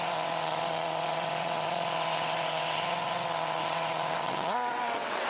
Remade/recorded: remade